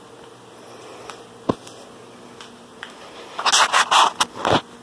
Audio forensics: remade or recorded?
recorded